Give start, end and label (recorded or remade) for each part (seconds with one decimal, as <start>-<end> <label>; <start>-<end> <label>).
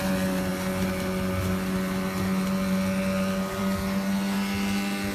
0.0-5.1 recorded